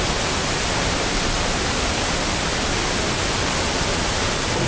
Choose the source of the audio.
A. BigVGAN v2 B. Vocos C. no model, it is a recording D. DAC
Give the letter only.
C